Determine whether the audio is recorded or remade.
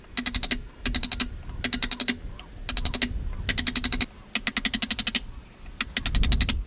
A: recorded